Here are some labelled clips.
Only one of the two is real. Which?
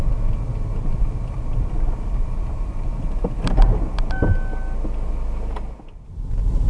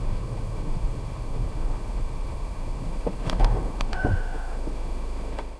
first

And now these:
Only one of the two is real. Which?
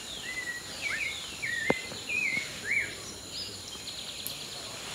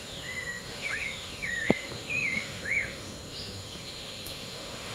first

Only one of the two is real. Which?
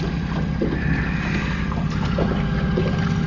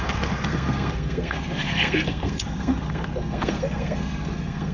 first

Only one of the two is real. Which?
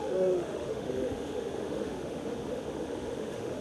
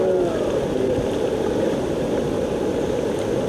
second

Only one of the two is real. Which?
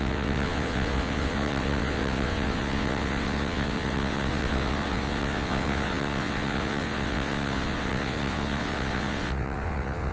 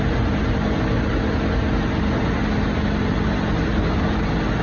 second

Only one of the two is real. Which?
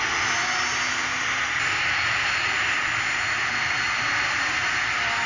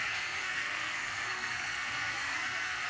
first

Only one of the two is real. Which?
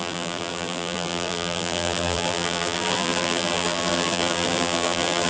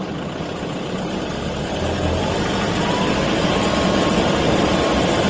second